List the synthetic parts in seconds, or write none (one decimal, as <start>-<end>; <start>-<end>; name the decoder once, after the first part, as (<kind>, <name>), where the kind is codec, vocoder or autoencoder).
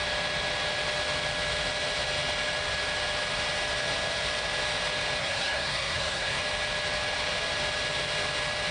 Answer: 5.2-6.4 (codec, SNAC)